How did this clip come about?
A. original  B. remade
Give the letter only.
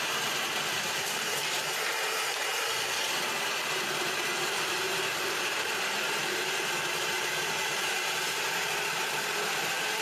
B